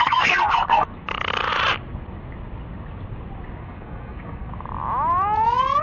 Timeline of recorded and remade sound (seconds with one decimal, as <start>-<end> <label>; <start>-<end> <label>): 0.0-0.9 remade; 0.9-3.6 recorded; 3.6-4.5 remade; 4.5-5.8 recorded

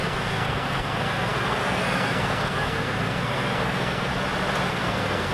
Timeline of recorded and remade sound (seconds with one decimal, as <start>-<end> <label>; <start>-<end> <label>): 0.0-4.1 remade; 4.1-4.7 recorded; 4.7-5.3 remade

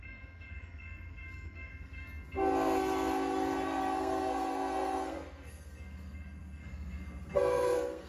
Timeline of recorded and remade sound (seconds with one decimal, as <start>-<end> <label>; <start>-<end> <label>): 0.0-8.1 remade

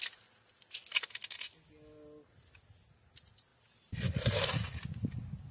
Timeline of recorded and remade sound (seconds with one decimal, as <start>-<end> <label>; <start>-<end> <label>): 0.0-5.5 recorded

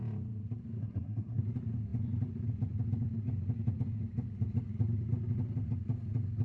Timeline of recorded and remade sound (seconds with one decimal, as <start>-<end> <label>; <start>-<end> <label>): 0.0-0.8 recorded; 0.8-1.4 remade; 1.4-6.4 recorded

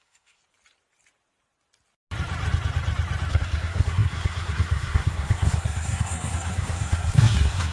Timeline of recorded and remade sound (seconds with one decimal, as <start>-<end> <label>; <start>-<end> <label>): 0.0-0.4 remade; 0.4-3.3 recorded; 3.3-7.7 remade

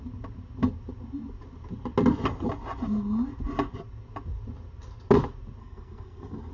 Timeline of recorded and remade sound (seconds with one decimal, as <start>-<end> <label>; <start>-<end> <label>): 0.0-5.6 recorded; 5.6-6.5 remade

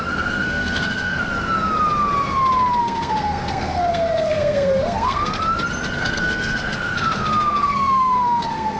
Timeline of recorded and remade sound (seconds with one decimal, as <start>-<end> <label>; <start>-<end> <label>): 0.0-1.3 remade; 1.3-2.8 recorded; 2.8-5.4 remade; 5.4-6.0 recorded; 6.0-8.8 remade